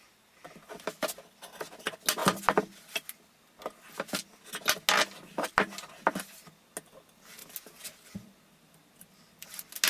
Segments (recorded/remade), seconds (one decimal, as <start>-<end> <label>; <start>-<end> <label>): 0.0-7.4 recorded; 7.4-8.3 remade; 8.3-9.9 recorded